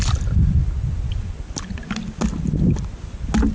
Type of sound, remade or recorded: recorded